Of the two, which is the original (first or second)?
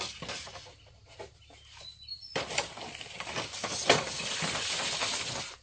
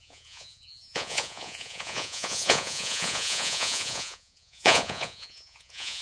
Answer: first